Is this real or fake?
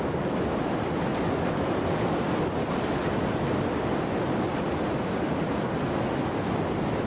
real